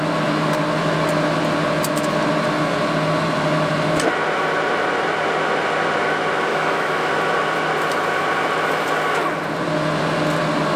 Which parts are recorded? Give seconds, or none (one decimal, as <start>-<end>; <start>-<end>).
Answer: 0.0-6.5; 7.1-10.8